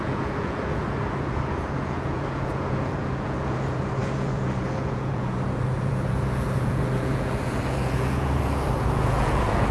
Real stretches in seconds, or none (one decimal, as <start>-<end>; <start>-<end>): none